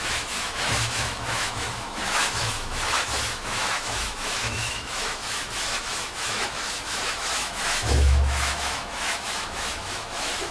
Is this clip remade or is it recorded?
remade